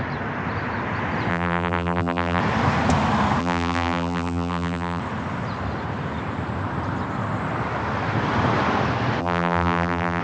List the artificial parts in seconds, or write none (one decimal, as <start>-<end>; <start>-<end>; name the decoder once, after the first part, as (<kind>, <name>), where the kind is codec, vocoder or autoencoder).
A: 1.3-2.4 (vocoder, BigVGAN v2); 3.4-5.0; 9.2-10.2